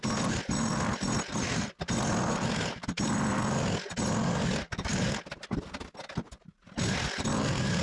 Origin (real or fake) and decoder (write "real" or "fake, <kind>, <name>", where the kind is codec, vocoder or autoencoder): real